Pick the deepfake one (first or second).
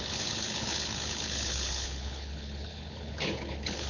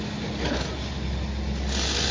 first